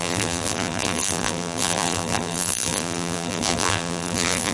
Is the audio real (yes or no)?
no